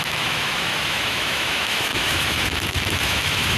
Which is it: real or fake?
fake